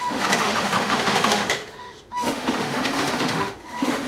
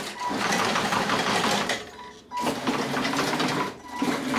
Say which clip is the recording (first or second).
second